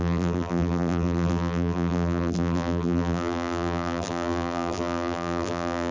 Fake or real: fake